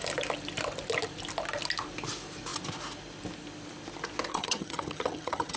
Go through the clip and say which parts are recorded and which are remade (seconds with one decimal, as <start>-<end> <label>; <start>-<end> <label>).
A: 0.0-4.3 recorded; 4.3-5.6 remade